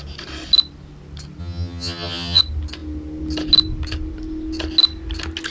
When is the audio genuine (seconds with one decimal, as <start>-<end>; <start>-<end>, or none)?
0.0-1.4; 2.4-5.5